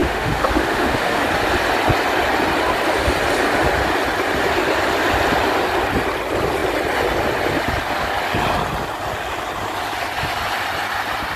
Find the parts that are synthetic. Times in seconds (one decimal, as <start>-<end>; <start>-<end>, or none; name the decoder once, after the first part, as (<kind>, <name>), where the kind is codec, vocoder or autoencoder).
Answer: 0.0-1.2 (autoencoder, DAC-VAE)